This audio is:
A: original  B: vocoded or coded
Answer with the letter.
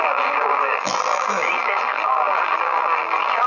B